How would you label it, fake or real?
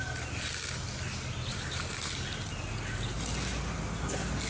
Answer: real